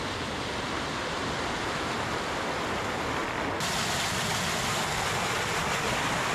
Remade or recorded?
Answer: recorded